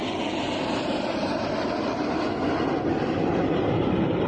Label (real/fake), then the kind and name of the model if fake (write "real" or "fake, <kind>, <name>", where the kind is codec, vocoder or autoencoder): fake, vocoder, BigVGAN v2